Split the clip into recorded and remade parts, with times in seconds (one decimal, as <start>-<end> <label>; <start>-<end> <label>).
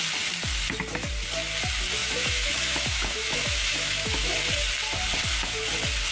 0.0-2.0 recorded; 2.0-4.3 remade; 4.3-6.1 recorded